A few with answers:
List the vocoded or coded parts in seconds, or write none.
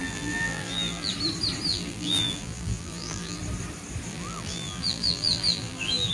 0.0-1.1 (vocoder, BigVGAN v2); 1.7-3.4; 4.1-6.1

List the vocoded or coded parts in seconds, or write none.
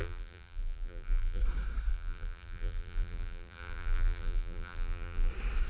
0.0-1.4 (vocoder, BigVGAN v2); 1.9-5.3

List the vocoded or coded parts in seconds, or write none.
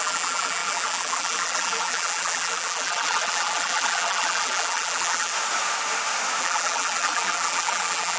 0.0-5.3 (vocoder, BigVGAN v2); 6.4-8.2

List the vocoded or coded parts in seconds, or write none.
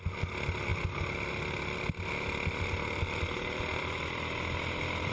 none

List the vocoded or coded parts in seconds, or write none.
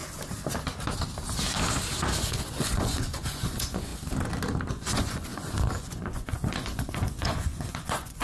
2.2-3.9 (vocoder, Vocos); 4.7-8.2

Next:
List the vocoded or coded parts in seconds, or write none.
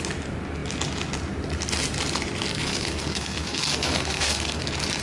2.5-4.6 (codec, SNAC)